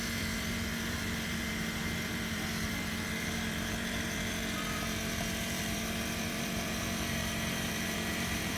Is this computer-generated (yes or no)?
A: yes